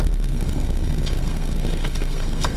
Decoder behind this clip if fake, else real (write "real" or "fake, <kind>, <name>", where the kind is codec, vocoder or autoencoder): fake, codec, SNAC